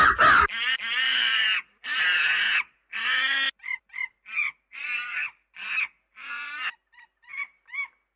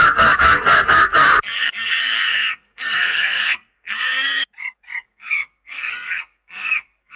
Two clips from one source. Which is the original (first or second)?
first